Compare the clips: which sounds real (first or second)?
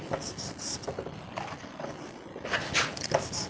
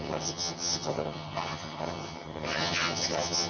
first